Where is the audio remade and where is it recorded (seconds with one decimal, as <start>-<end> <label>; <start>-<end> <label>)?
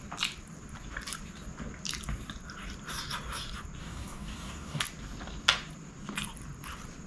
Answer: 0.0-3.8 recorded; 3.8-4.8 remade; 4.8-7.1 recorded